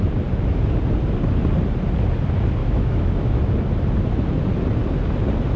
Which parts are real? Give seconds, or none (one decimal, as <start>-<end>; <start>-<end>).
0.0-2.6; 3.4-5.6